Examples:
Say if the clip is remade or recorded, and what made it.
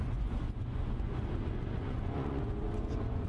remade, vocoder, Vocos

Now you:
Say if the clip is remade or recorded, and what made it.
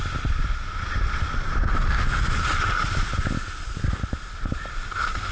recorded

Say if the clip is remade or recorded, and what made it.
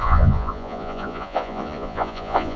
remade, vocoder, Vocos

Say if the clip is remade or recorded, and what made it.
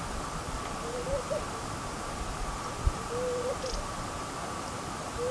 recorded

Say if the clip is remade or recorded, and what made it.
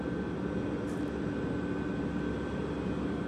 recorded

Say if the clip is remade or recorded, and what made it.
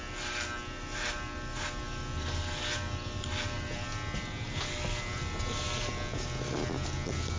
recorded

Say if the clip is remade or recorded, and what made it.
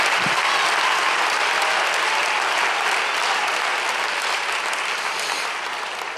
recorded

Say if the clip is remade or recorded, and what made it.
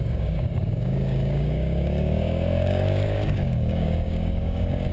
remade, codec, DAC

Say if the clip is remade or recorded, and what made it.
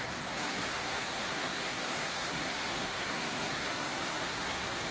remade, codec, SNAC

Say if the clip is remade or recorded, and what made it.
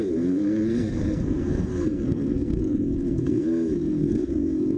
remade, codec, SNAC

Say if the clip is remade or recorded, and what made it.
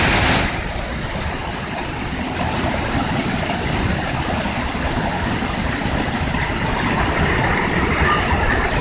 recorded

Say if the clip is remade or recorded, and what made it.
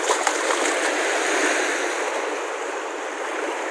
recorded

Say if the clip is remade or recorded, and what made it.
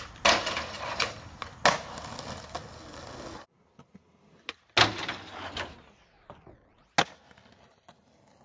recorded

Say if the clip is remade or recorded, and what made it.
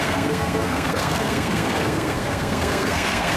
remade, codec, SNAC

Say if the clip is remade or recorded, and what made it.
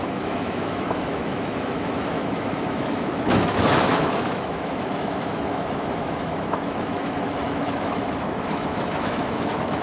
remade, autoencoder, DAC-VAE